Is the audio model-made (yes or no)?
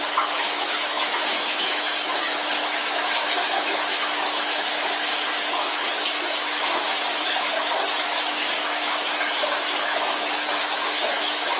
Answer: yes